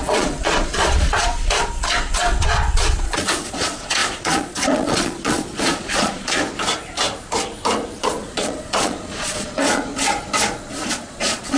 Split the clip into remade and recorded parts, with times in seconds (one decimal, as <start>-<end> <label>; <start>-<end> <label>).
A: 0.0-6.4 remade; 6.4-8.0 recorded; 8.0-9.9 remade; 9.9-10.9 recorded; 10.9-11.6 remade